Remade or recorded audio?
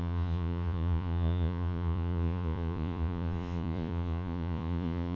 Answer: remade